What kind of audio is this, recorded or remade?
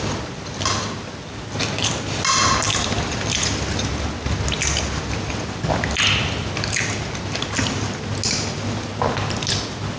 recorded